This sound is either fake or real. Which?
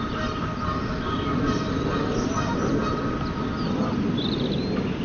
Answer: real